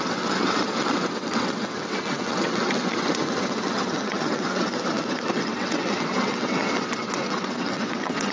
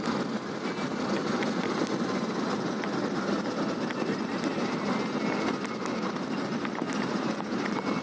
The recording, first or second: second